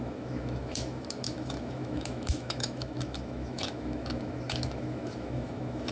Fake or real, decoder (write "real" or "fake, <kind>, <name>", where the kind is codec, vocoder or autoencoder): fake, autoencoder, DAC-VAE